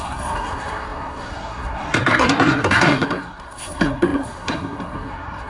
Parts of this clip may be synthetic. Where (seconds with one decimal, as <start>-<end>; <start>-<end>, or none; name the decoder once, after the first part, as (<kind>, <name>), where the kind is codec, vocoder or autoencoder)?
0.0-5.5 (codec, SNAC)

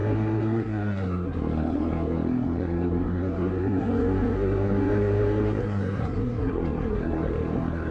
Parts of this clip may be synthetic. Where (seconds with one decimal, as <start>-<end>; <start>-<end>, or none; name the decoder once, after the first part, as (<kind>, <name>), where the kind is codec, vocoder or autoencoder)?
0.0-7.9 (codec, SNAC)

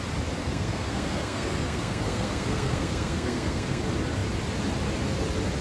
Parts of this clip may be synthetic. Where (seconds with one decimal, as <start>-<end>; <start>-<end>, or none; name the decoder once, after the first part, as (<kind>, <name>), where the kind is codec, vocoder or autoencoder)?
0.4-3.8 (codec, SNAC)

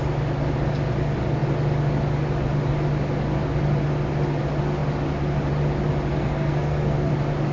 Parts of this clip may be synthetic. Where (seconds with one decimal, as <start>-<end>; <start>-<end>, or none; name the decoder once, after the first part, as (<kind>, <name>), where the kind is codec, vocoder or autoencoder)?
6.1-7.1 (codec, SNAC)

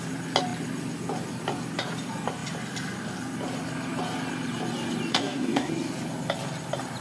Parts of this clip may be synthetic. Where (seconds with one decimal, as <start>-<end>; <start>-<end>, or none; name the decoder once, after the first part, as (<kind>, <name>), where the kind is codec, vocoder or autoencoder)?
5.1-5.7 (codec, SNAC)

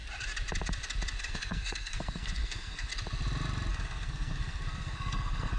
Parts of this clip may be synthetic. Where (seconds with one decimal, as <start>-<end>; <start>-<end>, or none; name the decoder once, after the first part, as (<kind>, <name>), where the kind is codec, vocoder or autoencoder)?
1.2-2.9 (codec, SNAC); 3.7-5.6

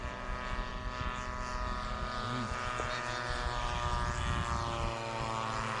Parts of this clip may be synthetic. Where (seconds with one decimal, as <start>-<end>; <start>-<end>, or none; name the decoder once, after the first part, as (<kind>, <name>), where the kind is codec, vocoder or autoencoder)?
none